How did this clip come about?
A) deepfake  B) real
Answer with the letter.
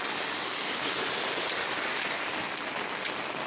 B